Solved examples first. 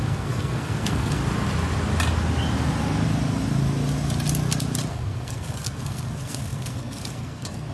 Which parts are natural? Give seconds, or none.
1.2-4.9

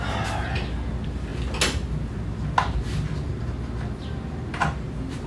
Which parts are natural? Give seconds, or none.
0.0-5.3

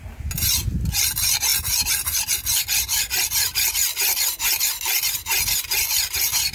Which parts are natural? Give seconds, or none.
0.0-6.5